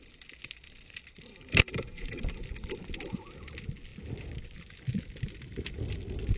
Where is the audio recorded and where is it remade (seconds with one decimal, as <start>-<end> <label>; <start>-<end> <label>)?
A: 0.0-1.3 recorded; 1.3-2.2 remade; 2.2-6.4 recorded

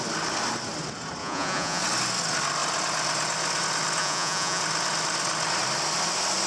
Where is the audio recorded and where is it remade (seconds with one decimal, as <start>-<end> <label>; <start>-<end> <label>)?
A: 0.0-1.2 recorded; 1.2-1.8 remade; 1.8-4.0 recorded; 4.0-4.6 remade; 4.6-6.5 recorded

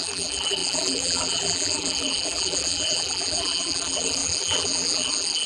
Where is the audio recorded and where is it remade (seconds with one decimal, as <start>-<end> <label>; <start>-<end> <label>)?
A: 0.0-5.5 remade

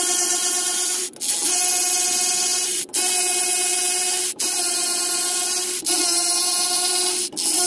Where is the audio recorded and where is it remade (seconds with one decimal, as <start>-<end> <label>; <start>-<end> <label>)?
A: 0.0-0.4 recorded; 0.4-1.0 remade; 1.0-7.7 recorded

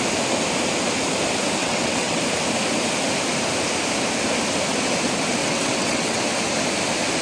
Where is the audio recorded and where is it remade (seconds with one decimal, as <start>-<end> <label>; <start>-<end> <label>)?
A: 0.0-1.6 recorded; 1.6-2.2 remade; 2.2-5.4 recorded; 5.4-6.2 remade; 6.2-7.2 recorded

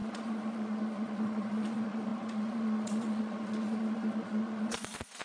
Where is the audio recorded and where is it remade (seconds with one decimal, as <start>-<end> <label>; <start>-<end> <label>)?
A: 0.0-5.2 remade

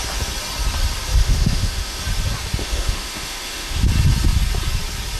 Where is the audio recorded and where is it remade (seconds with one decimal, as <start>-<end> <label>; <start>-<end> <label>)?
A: 0.0-1.2 recorded; 1.2-2.0 remade; 2.0-2.6 recorded; 2.6-3.8 remade; 3.8-5.2 recorded

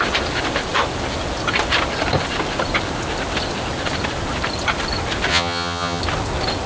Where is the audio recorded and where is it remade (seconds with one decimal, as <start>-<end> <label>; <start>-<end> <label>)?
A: 0.0-5.3 recorded; 5.3-6.0 remade; 6.0-6.7 recorded